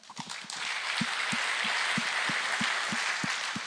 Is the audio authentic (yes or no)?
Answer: yes